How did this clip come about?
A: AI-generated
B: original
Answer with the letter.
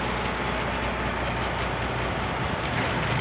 B